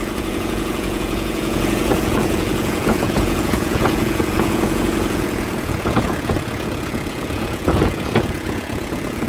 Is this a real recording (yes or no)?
no